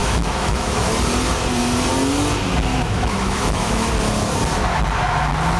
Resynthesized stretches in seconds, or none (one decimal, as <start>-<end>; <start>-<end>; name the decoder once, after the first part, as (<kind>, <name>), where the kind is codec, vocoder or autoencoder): 0.0-0.9 (autoencoder, DAC-VAE); 2.7-3.9